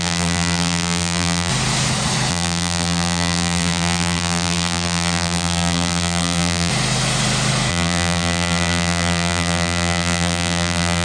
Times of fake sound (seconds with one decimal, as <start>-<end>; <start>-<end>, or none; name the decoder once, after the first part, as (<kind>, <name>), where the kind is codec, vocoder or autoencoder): 0.0-1.5 (vocoder, BigVGAN v2); 2.3-6.7; 7.7-11.0

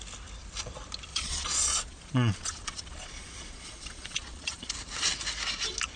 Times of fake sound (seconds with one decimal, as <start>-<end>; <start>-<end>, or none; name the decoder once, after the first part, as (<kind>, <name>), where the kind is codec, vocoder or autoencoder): 1.1-4.7 (vocoder, Vocos)

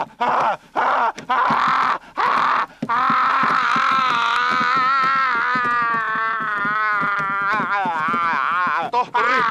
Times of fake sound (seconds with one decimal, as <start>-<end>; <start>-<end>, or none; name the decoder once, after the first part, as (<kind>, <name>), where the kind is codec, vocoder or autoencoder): 3.3-4.0 (vocoder, BigVGAN v2)

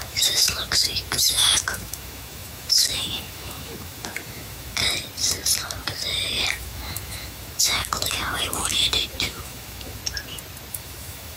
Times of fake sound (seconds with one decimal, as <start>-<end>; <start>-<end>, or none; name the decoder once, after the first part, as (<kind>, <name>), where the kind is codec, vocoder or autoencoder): 0.0-4.8 (autoencoder, DAC-VAE); 6.5-10.0; 10.7-11.4

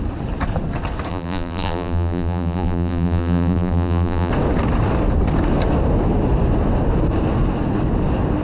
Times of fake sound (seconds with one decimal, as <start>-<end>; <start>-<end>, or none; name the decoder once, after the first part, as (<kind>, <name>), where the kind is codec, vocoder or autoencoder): 1.1-4.3 (vocoder, BigVGAN v2)